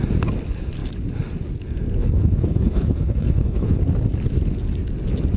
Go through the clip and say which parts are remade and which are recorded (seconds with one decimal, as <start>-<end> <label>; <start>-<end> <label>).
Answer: 0.0-2.0 recorded; 2.0-3.8 remade; 3.8-5.4 recorded